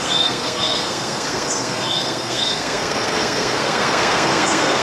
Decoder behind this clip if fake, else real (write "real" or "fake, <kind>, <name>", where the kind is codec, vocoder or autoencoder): fake, codec, SNAC